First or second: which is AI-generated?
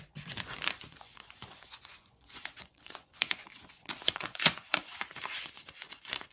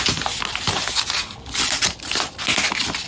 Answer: first